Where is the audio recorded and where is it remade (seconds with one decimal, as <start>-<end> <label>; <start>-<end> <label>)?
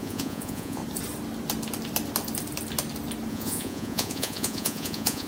0.0-0.8 remade; 0.8-3.3 recorded; 3.3-5.3 remade